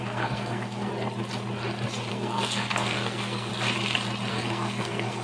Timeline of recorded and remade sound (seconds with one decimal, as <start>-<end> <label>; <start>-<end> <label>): 0.0-0.9 remade; 0.9-2.1 recorded; 2.1-3.5 remade; 3.5-4.3 recorded; 4.3-5.2 remade